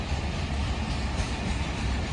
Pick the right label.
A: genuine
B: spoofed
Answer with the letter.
A